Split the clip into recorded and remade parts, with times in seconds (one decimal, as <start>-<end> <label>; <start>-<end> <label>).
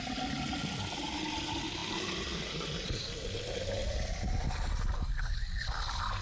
0.0-6.2 recorded